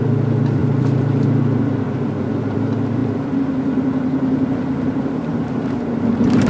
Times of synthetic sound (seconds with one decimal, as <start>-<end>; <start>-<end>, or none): 0.0-6.5